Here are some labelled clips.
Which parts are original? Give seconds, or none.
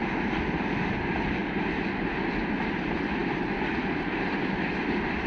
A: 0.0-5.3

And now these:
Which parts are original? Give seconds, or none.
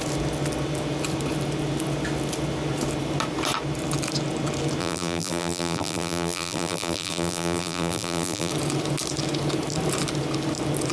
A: 0.0-4.8; 8.5-10.9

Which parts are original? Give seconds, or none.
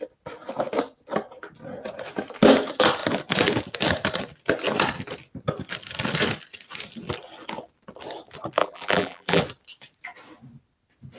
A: 0.0-8.6; 9.4-11.2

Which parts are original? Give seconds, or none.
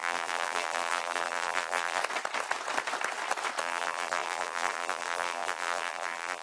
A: 2.0-3.6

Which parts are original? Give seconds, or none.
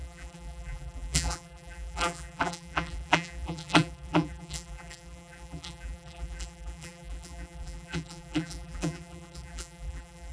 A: none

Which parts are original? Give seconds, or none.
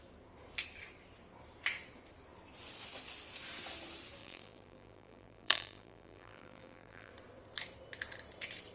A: 0.0-4.2; 7.1-8.7